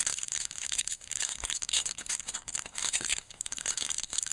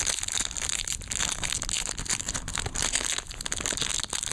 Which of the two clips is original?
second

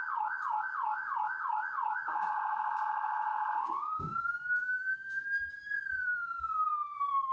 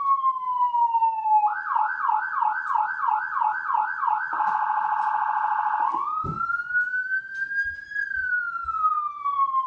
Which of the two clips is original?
second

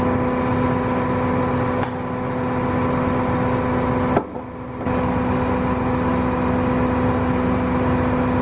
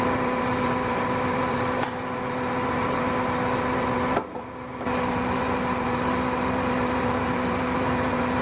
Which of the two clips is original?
first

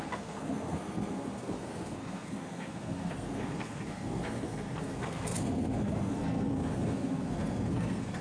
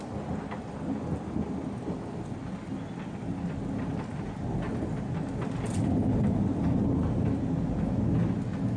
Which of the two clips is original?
second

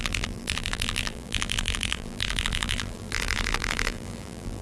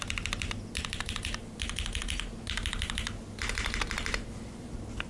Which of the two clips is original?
second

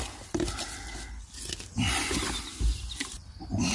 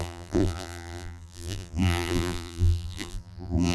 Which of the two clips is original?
first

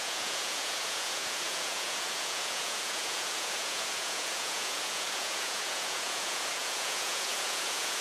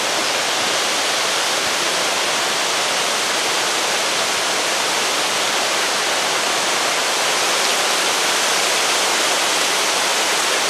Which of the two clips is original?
second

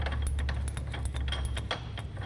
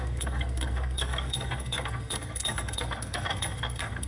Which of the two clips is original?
first